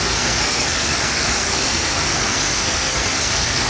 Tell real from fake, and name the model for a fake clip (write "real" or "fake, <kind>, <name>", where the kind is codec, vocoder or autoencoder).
fake, codec, SNAC